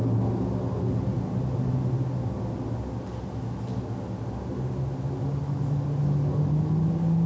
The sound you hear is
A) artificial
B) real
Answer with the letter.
B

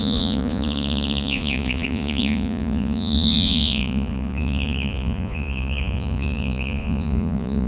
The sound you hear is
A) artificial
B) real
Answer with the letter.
A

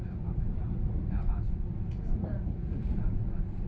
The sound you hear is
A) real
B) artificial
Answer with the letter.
B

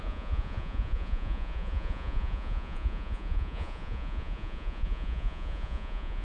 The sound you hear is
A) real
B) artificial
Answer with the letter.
B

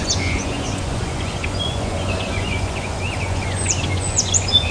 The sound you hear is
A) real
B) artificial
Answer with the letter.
B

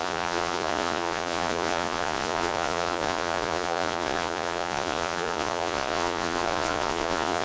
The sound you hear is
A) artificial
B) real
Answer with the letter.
A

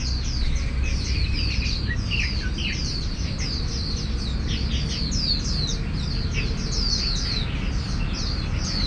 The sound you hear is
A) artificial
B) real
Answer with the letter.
B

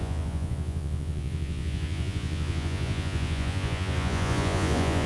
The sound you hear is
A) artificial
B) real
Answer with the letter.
A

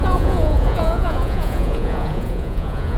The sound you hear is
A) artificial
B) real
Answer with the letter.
A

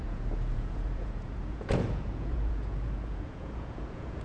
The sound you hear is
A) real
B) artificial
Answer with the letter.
B